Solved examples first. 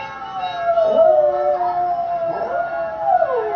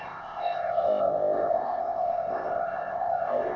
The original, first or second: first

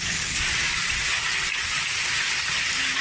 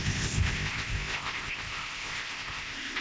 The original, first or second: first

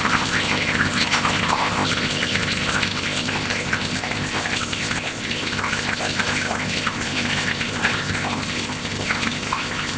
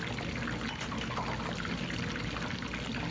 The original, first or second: second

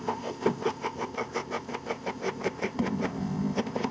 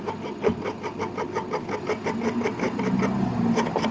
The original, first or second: second